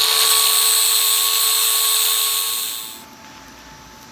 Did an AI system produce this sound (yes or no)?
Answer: no